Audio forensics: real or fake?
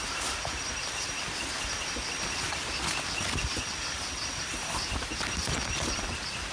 real